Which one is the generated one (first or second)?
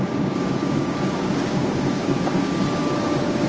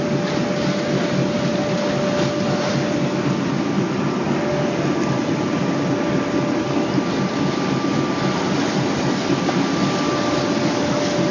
first